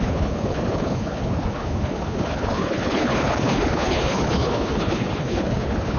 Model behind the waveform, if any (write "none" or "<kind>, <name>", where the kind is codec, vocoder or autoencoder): codec, HILCodec